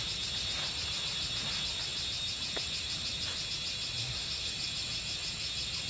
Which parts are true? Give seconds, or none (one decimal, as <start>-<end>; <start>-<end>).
0.0-4.0; 4.5-5.9